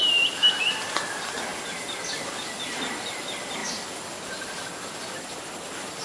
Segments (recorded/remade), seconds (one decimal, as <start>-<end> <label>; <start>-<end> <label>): 0.0-6.0 recorded